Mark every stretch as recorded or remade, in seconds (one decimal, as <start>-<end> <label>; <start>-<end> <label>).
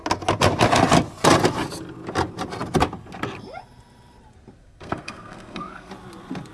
0.0-4.6 recorded; 4.6-5.9 remade; 5.9-6.5 recorded